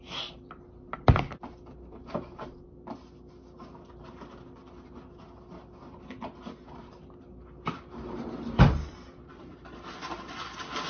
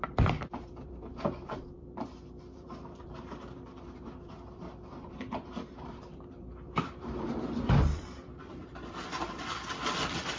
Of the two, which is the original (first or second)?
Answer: first